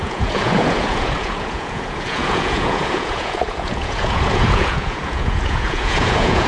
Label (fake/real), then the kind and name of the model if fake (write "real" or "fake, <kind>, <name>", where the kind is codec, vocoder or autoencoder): fake, vocoder, Vocos